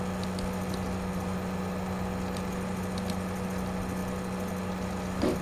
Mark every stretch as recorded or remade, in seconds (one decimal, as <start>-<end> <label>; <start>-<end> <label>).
0.0-5.4 recorded